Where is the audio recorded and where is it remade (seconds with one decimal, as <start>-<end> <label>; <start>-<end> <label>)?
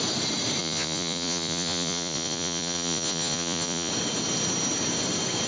0.0-0.6 recorded; 0.6-3.9 remade; 3.9-5.5 recorded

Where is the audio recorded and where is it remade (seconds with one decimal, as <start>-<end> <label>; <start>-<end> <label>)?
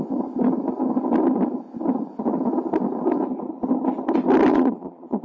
0.0-4.5 recorded; 4.5-5.2 remade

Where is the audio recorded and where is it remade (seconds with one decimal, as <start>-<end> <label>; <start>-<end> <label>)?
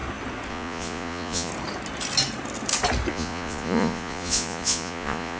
0.0-0.5 recorded; 0.5-1.5 remade; 1.5-3.1 recorded; 3.1-5.4 remade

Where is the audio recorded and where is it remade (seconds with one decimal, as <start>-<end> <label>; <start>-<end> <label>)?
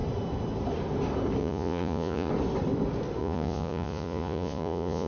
0.0-1.4 recorded; 1.4-2.3 remade; 2.3-3.2 recorded; 3.2-5.1 remade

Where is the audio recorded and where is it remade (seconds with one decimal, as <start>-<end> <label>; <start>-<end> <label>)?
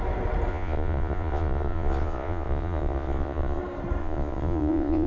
0.0-0.5 recorded; 0.5-3.6 remade; 3.6-4.0 recorded; 4.0-5.1 remade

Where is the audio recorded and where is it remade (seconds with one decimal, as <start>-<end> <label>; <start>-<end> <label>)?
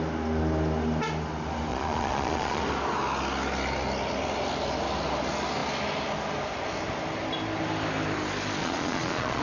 0.0-1.7 recorded; 1.7-2.6 remade; 2.6-8.6 recorded; 8.6-9.4 remade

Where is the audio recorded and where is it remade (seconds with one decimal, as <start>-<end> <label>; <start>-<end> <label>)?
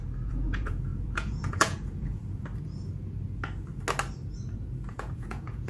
0.0-2.2 remade; 2.2-4.9 recorded; 4.9-5.7 remade